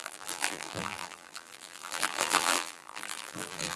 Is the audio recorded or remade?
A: remade